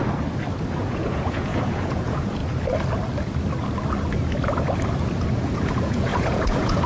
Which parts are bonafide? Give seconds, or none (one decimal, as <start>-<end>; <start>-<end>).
0.0-0.8; 2.4-5.4